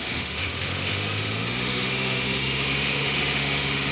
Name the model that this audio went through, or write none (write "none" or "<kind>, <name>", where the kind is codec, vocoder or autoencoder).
autoencoder, DAC-VAE